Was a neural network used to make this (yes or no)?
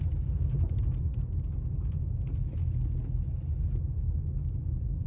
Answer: no